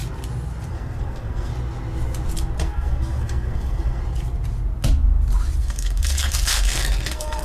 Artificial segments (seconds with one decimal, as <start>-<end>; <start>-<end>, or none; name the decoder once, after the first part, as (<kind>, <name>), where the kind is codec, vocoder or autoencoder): 0.7-1.5 (codec, SNAC); 2.6-4.0; 5.6-7.4